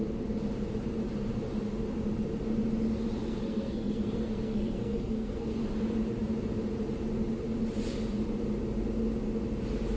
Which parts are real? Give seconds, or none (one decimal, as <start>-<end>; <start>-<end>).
0.0-3.2; 5.6-10.0